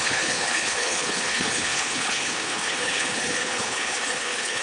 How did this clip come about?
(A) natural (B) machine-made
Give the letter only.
B